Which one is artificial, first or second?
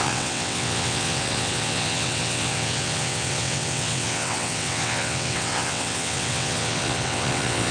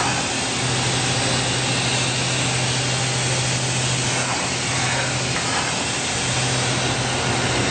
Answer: first